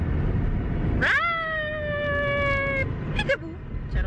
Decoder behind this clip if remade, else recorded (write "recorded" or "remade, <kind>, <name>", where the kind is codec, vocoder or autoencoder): recorded